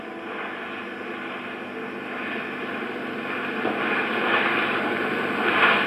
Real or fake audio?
real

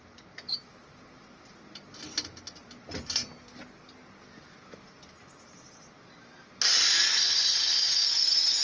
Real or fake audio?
real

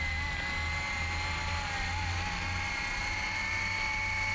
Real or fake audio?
real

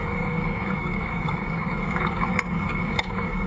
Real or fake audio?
fake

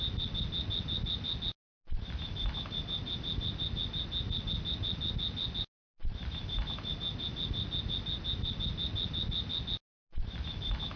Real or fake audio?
real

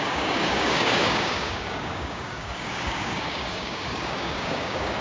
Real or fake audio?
fake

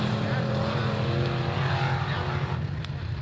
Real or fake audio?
real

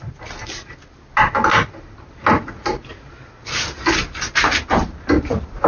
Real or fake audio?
real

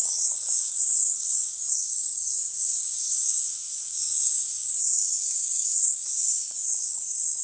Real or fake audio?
fake